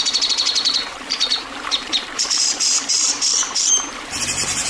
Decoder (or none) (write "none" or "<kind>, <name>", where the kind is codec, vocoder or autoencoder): vocoder, BigVGAN v2